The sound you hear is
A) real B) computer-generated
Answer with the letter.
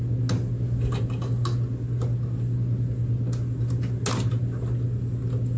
A